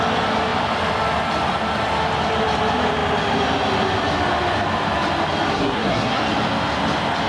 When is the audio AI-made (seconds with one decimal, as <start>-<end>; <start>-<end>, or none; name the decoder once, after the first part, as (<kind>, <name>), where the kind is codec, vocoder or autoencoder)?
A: 5.5-6.2 (codec, SNAC)